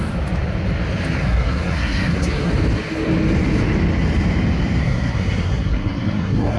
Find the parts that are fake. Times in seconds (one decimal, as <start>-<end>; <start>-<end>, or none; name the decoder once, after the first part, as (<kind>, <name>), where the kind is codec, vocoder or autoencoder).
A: 1.2-2.5 (codec, SNAC); 4.8-6.6